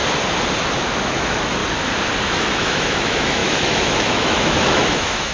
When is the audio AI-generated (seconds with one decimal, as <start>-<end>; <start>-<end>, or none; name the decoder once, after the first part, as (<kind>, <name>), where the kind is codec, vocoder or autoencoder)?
0.8-1.6 (autoencoder, DAC-VAE); 2.2-5.3